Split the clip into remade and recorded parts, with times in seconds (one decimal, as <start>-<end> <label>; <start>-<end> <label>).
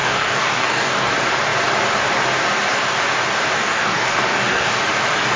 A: 0.0-1.1 remade; 1.1-3.6 recorded; 3.6-4.8 remade; 4.8-5.4 recorded